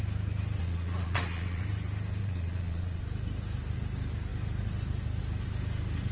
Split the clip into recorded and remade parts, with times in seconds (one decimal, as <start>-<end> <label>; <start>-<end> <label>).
0.0-0.6 recorded; 0.6-1.6 remade; 1.6-2.2 recorded; 2.2-3.0 remade; 3.0-6.1 recorded